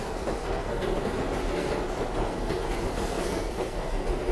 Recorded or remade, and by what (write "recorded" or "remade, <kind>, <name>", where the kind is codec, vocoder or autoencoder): remade, codec, SNAC